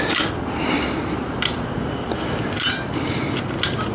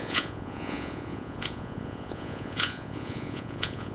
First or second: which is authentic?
first